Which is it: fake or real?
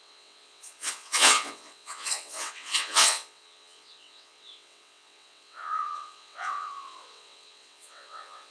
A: fake